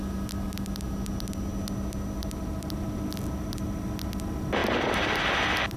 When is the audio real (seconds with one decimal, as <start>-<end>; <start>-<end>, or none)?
0.0-5.8